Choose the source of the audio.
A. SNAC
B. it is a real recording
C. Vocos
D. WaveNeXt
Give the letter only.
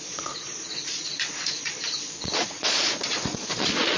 C